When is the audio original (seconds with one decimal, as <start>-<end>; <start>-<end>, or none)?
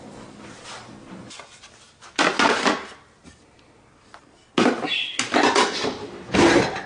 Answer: 0.0-6.9